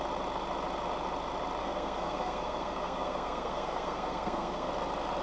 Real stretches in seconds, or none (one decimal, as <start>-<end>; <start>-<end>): 0.0-1.6; 4.7-5.2